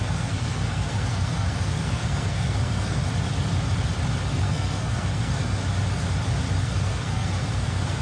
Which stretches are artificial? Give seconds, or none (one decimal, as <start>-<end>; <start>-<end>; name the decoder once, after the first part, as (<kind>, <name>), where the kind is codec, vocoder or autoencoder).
0.0-3.0 (codec, SNAC); 4.3-5.6; 6.6-8.0